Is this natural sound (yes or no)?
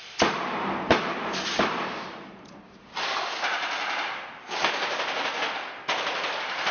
no